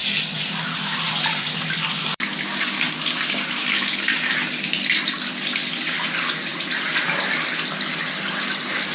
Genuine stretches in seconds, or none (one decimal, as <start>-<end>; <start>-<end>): 0.0-2.1; 4.3-8.9